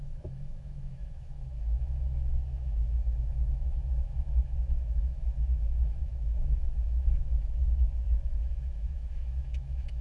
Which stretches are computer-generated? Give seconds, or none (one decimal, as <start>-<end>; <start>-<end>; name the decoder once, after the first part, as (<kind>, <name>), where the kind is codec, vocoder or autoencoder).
0.0-10.0 (autoencoder, DAC-VAE)